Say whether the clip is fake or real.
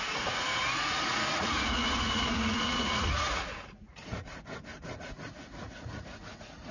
fake